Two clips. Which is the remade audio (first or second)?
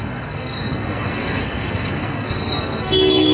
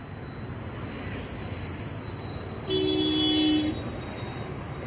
first